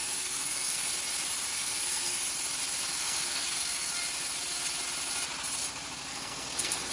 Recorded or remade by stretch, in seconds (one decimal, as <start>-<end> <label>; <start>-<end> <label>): 0.0-0.9 remade; 0.9-1.5 recorded; 1.5-2.2 remade; 2.2-2.9 recorded; 2.9-3.9 remade; 3.9-6.1 recorded; 6.1-6.9 remade